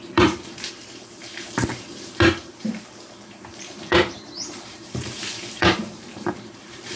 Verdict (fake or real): fake